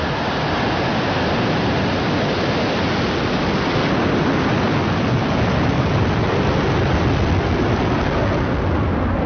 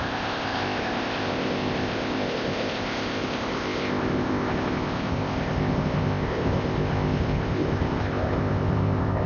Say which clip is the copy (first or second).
second